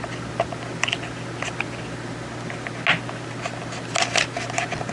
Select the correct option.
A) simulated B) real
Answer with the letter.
B